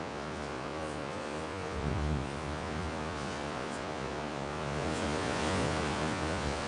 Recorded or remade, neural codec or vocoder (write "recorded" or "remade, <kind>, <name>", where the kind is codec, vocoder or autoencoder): remade, vocoder, Vocos